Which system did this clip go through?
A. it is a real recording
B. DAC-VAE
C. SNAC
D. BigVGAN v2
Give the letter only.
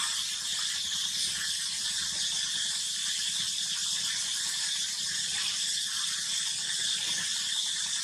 D